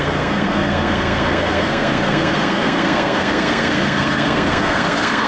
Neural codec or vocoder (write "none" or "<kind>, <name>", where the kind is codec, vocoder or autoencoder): codec, SNAC